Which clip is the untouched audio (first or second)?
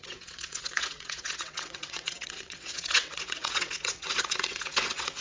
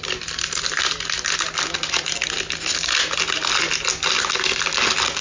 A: second